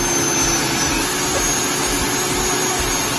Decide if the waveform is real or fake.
real